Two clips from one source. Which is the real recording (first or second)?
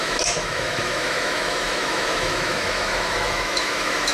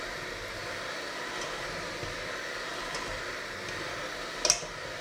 second